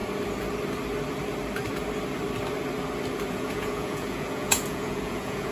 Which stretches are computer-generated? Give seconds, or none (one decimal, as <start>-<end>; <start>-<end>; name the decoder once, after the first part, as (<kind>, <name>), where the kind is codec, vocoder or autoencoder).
3.3-5.5 (vocoder, Vocos)